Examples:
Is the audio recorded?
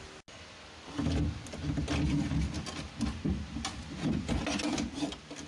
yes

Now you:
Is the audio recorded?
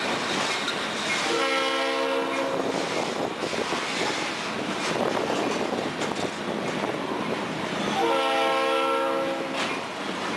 yes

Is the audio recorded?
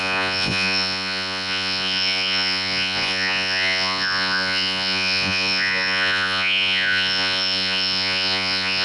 no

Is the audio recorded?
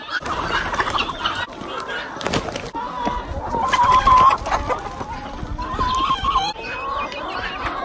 yes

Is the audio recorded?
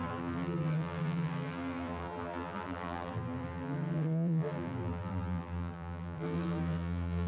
no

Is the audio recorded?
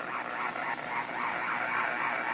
yes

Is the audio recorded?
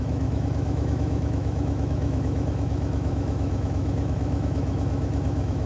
no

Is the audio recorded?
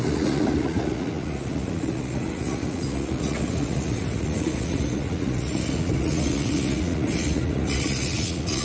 no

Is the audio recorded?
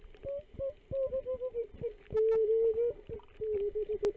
yes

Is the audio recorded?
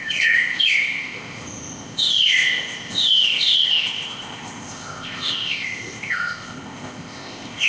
no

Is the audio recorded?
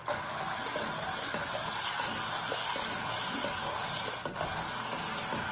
yes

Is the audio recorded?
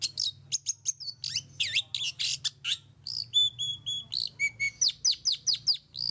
yes